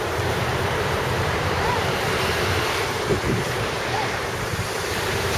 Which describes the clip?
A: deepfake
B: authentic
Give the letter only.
A